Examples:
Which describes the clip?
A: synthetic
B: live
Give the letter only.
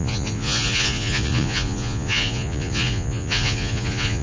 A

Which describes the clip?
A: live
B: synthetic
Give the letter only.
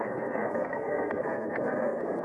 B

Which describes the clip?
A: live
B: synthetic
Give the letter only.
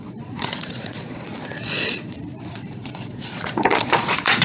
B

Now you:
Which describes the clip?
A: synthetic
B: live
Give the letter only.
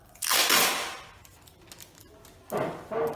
B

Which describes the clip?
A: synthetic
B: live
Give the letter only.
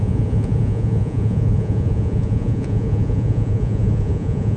A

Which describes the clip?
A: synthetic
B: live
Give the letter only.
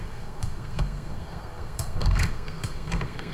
A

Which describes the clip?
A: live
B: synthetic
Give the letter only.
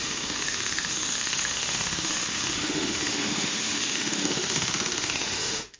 B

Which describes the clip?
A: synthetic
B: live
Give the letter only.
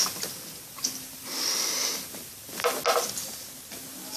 B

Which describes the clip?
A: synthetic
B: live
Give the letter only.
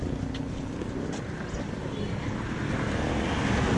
B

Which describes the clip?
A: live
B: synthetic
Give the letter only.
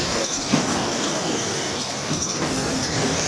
B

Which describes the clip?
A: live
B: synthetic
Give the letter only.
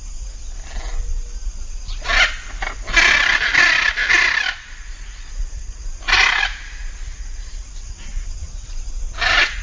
A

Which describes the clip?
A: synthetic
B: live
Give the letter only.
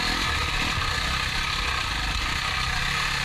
B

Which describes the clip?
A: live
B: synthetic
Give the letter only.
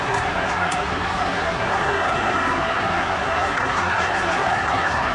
B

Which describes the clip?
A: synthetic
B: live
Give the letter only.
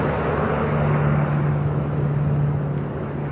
B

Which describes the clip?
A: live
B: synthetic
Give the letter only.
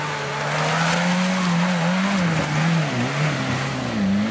A